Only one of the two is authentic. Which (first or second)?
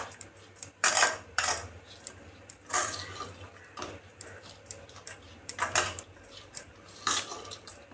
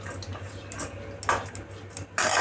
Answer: second